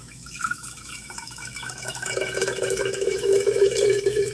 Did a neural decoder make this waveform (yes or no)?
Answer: yes